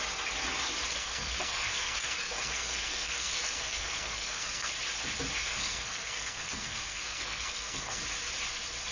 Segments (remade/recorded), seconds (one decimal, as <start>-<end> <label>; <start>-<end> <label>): 0.0-0.9 recorded; 0.9-4.7 remade; 4.7-5.4 recorded; 5.4-8.0 remade; 8.0-8.9 recorded